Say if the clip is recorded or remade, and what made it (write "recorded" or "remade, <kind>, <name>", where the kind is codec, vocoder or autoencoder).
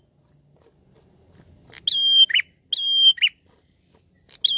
recorded